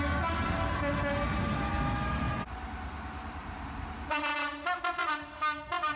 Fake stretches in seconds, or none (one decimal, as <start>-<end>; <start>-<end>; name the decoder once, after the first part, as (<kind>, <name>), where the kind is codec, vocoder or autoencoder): none

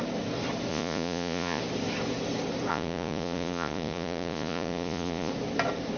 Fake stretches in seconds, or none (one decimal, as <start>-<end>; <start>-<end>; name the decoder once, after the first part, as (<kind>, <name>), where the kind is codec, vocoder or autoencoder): 0.7-1.6 (vocoder, Vocos); 2.7-5.3